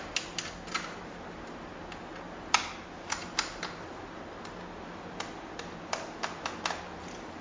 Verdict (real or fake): real